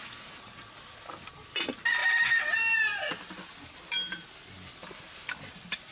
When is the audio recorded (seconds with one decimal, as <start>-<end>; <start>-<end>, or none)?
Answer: 0.0-5.9